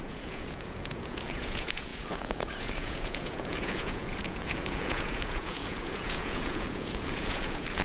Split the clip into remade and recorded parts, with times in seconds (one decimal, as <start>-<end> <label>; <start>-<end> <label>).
0.0-7.8 remade